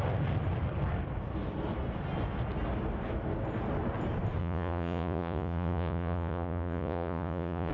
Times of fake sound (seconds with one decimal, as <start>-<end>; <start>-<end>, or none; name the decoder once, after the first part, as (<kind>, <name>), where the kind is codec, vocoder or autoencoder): 4.4-7.7 (vocoder, Vocos)